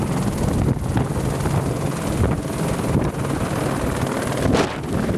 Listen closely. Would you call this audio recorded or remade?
recorded